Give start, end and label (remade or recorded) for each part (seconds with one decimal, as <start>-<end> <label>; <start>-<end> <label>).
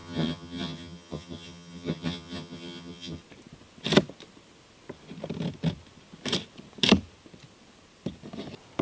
0.0-3.2 remade; 3.2-8.8 recorded